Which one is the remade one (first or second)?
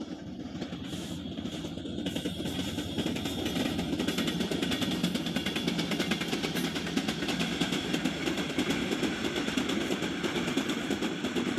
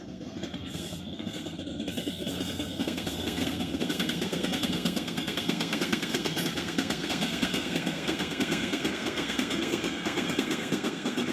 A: second